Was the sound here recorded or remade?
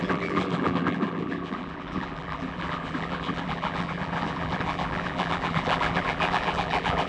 remade